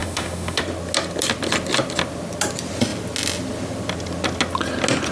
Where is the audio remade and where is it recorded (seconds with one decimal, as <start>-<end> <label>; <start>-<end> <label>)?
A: 0.0-0.6 remade; 0.6-5.1 recorded